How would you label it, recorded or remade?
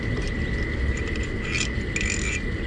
recorded